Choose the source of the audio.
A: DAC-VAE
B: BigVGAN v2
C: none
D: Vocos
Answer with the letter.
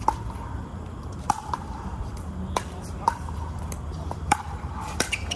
B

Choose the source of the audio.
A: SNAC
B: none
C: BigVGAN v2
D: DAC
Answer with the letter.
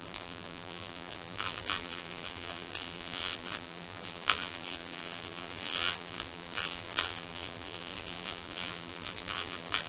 C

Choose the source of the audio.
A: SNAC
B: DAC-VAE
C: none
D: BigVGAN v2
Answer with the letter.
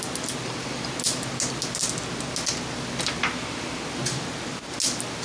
C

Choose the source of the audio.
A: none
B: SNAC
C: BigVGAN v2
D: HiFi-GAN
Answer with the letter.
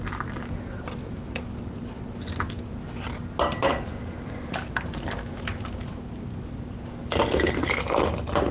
A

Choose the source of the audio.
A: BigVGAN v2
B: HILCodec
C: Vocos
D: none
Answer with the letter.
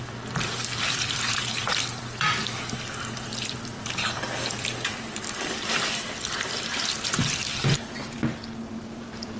A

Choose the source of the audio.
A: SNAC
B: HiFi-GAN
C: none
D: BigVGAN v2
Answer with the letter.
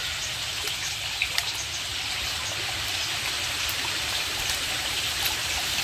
C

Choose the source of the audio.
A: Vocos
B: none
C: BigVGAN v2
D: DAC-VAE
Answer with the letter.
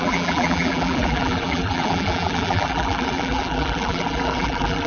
C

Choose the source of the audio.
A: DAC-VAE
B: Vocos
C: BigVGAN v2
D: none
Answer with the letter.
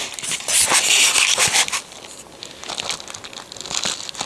D